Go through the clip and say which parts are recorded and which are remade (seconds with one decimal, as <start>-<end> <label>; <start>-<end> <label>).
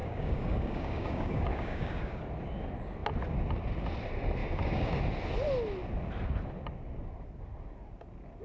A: 0.0-2.2 remade; 2.2-4.4 recorded; 4.4-5.0 remade; 5.0-8.4 recorded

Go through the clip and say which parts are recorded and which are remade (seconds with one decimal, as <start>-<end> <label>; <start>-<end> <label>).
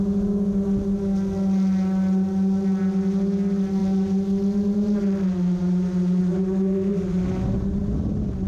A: 0.0-8.5 recorded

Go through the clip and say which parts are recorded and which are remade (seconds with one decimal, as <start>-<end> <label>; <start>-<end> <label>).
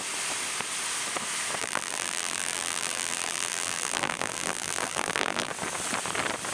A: 0.0-1.6 recorded; 1.6-5.5 remade; 5.5-6.5 recorded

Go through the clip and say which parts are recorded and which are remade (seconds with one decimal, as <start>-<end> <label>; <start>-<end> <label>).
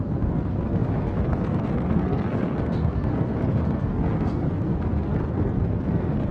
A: 0.0-6.3 remade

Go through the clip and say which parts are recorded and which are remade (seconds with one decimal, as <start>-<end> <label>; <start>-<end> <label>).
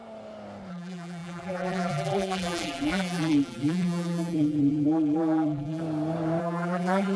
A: 0.0-0.7 recorded; 0.7-5.8 remade; 5.8-6.4 recorded; 6.4-7.2 remade